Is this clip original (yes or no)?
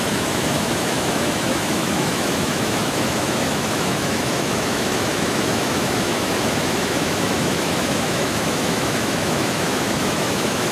no